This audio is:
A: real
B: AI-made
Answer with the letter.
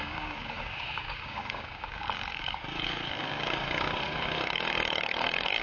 B